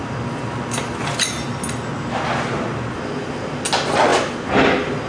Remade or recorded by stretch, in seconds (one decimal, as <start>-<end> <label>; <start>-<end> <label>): 0.0-5.1 recorded